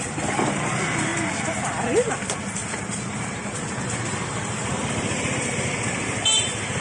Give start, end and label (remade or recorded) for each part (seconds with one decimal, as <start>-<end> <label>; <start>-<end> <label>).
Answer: 0.0-2.6 recorded; 2.6-6.8 remade